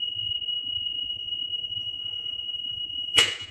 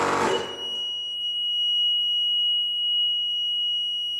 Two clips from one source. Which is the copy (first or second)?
first